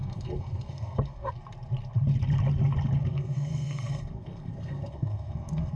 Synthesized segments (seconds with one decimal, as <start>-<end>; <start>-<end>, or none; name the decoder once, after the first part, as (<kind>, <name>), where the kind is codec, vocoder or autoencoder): 0.0-1.3 (codec, SNAC); 3.0-5.8